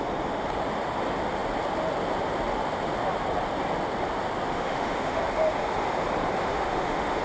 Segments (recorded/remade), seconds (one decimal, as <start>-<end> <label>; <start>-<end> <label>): 0.0-4.5 recorded; 4.5-5.2 remade; 5.2-6.4 recorded; 6.4-7.2 remade